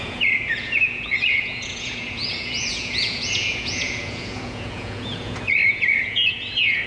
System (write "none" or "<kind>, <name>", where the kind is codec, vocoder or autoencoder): vocoder, Vocos